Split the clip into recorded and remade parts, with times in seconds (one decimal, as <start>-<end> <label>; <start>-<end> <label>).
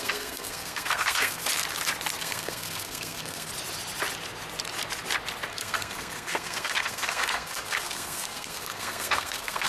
0.0-1.4 remade; 1.4-2.2 recorded; 2.2-3.5 remade; 3.5-5.5 recorded; 5.5-9.7 remade